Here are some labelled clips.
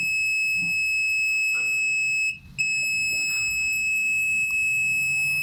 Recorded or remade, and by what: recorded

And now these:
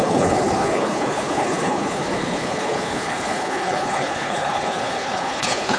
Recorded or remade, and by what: remade, codec, HILCodec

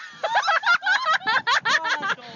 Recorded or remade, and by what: recorded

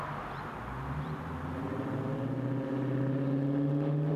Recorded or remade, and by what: recorded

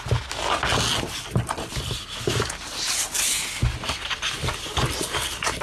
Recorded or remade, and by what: recorded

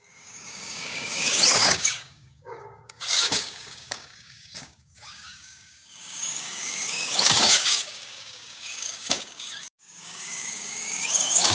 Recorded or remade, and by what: remade, codec, DAC